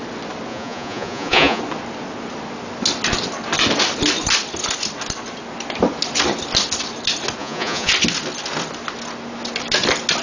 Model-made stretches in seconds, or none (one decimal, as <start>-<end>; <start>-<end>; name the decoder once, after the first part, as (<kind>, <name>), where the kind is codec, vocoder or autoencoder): 0.5-1.6 (vocoder, Vocos); 7.4-7.9